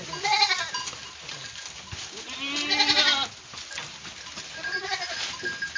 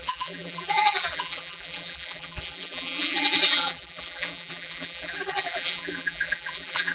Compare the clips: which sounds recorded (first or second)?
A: first